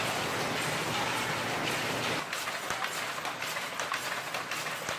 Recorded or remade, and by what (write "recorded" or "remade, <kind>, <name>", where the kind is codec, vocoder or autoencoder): recorded